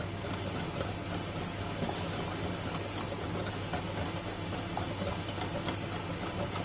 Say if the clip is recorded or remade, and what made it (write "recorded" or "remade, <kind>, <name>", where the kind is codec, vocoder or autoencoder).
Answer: recorded